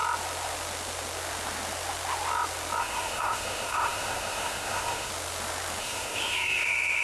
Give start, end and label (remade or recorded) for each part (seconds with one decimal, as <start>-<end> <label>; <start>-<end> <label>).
0.0-2.8 recorded; 2.8-5.1 remade; 5.1-5.8 recorded; 5.8-7.0 remade